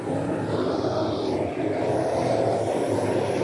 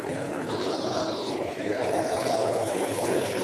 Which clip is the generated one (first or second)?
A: second